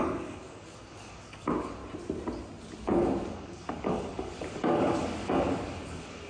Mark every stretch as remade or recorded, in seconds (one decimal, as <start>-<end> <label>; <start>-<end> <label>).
0.0-1.8 remade; 1.8-2.8 recorded; 2.8-6.3 remade